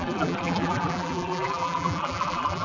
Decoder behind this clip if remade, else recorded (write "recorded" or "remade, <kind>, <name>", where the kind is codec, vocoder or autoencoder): remade, vocoder, BigVGAN v2